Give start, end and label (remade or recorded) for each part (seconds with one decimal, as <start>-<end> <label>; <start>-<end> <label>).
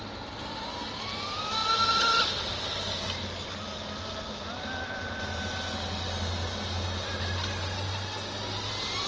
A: 0.0-9.1 recorded